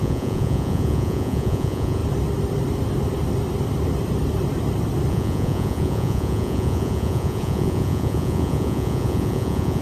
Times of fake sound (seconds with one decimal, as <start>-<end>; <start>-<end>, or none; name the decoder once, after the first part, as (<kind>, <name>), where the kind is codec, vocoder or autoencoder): 0.0-2.0 (vocoder, Vocos); 5.1-9.8